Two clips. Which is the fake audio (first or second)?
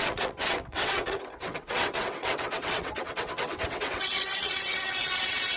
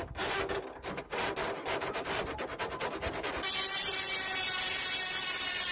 first